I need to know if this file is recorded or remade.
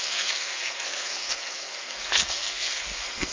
remade